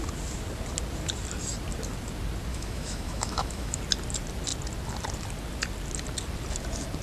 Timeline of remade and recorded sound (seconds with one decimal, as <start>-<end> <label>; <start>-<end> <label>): 0.0-2.5 recorded; 2.5-3.8 remade; 3.8-7.0 recorded